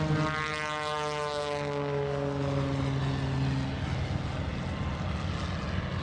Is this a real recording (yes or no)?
yes